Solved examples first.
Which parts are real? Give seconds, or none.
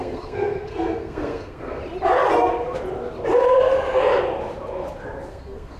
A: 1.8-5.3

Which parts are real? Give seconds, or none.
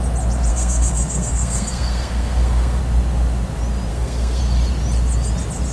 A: 0.0-0.5; 2.8-3.9; 4.4-5.7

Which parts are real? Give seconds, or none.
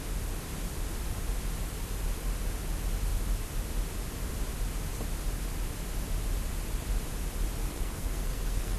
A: 0.0-7.6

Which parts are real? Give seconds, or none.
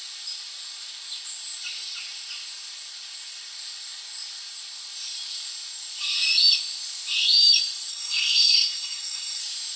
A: 0.0-7.9; 9.4-9.8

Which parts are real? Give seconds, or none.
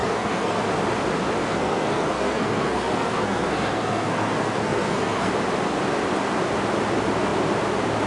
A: 0.6-1.4; 5.3-8.1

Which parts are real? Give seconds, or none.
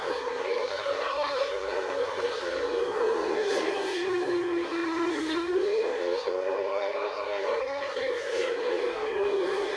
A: none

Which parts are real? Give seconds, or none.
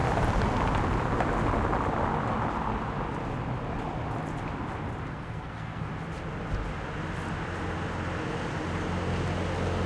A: 0.0-5.1; 5.9-9.9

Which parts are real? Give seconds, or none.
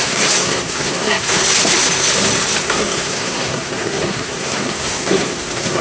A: 1.4-2.6